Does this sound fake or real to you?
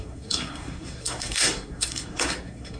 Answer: fake